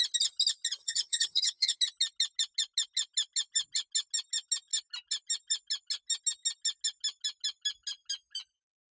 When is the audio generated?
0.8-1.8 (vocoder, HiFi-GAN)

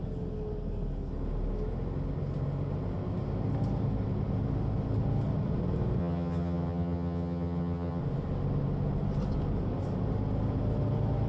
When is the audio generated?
6.0-8.0 (vocoder, HiFi-GAN)

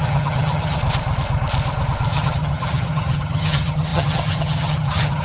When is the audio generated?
0.0-0.8 (vocoder, HiFi-GAN); 2.1-5.2